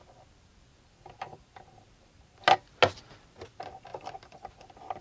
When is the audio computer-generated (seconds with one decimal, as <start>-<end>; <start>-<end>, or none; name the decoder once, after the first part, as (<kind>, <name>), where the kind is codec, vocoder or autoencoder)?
0.7-2.4 (vocoder, BigVGAN v2); 3.9-5.0